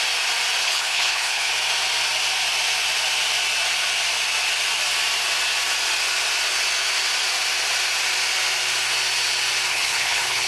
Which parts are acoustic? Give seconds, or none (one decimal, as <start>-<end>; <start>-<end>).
0.0-0.6; 1.5-9.7